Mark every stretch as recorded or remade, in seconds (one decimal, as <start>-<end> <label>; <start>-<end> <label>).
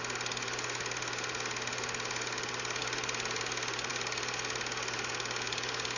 0.0-6.0 recorded